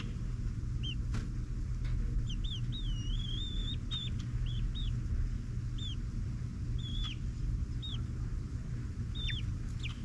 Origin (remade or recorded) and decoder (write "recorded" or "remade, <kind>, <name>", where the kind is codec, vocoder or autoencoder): recorded